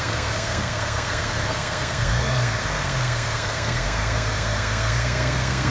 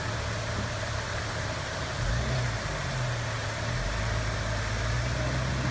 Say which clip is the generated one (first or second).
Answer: first